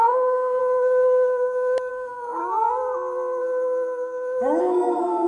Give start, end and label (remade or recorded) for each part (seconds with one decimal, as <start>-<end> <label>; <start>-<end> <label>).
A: 0.0-0.6 remade; 0.6-1.9 recorded; 1.9-2.4 remade; 2.4-4.6 recorded; 4.6-5.3 remade